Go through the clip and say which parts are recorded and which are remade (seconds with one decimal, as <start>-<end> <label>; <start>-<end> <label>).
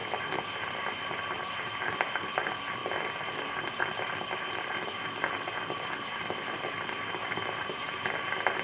0.0-8.6 recorded